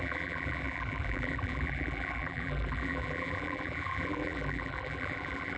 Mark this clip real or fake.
fake